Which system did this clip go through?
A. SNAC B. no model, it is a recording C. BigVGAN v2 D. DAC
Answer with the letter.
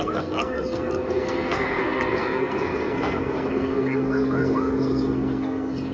A